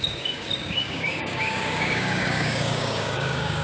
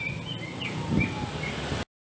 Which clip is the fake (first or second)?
first